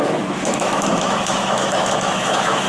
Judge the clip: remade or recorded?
remade